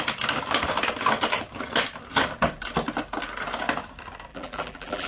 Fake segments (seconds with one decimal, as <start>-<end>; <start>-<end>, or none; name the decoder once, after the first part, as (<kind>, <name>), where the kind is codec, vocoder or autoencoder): 4.3-5.1 (vocoder, BigVGAN v2)